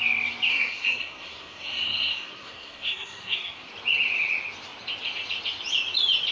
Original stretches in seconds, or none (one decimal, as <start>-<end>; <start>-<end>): 0.0-0.5; 3.7-6.3